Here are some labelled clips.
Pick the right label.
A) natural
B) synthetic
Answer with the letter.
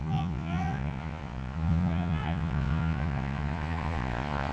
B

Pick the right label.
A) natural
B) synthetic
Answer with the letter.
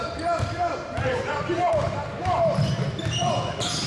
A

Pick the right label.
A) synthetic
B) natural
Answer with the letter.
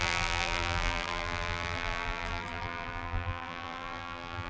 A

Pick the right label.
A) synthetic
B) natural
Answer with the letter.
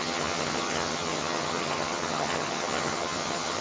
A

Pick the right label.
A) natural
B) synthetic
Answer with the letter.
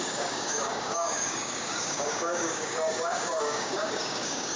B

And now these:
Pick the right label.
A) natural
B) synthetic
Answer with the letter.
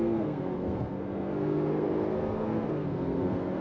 B